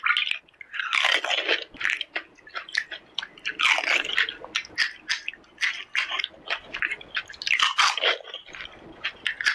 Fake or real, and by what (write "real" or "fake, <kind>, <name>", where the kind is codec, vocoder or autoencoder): real